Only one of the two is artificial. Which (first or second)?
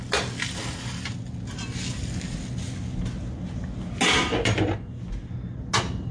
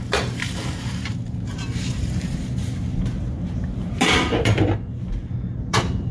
second